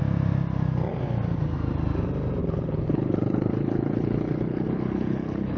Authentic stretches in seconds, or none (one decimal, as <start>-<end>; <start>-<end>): 0.0-2.4

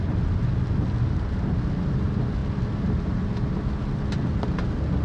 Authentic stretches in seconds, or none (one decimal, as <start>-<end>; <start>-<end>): 0.0-5.0